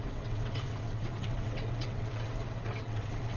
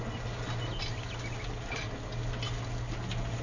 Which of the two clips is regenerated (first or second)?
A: first